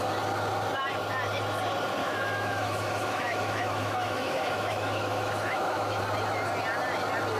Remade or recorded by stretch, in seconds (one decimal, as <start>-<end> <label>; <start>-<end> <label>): 0.0-2.0 recorded; 2.0-6.0 remade; 6.0-7.4 recorded